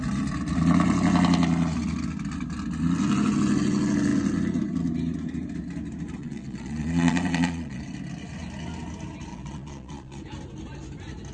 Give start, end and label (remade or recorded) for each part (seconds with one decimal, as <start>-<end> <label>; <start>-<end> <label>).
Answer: 0.0-6.2 recorded; 6.2-7.8 remade; 7.8-9.3 recorded; 9.3-10.2 remade; 10.2-11.3 recorded